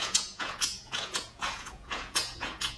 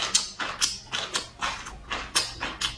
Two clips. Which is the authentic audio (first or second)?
second